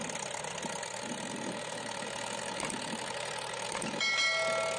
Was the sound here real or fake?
real